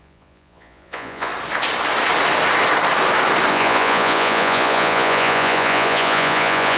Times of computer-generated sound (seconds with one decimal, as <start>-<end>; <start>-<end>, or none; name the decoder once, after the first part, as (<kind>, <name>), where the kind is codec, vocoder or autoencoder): 0.0-1.3 (vocoder, Vocos); 3.5-6.8